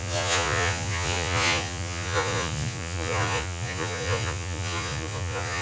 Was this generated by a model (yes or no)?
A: yes